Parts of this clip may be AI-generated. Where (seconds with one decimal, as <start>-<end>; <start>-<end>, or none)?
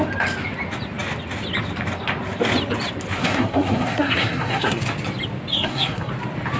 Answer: 3.2-4.8; 5.5-6.1